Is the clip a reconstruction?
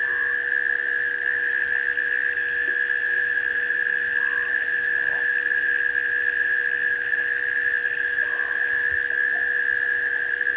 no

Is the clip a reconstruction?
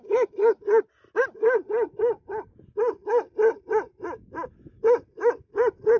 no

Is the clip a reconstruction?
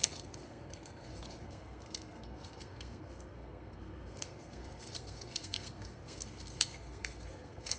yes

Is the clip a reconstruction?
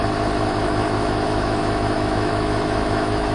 yes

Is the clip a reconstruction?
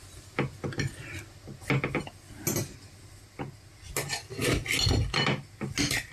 no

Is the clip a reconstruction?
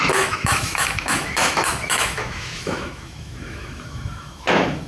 yes